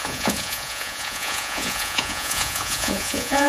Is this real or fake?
fake